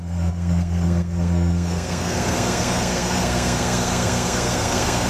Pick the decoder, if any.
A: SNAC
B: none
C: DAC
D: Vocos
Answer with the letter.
A